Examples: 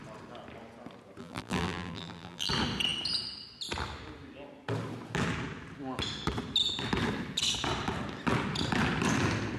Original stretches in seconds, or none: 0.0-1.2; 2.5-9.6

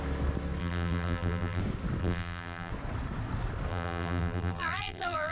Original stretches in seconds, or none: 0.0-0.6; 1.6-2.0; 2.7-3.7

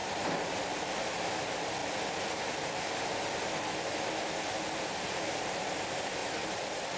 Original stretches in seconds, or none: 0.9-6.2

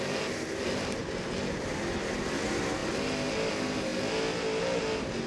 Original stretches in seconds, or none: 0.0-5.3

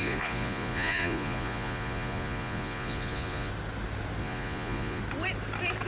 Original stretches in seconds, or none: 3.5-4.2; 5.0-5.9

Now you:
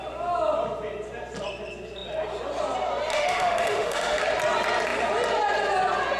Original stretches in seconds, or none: 0.0-3.1; 4.2-6.2

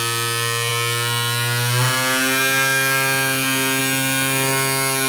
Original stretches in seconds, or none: 0.0-5.1

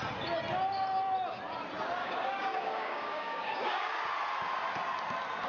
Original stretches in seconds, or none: 0.0-2.0; 4.0-5.5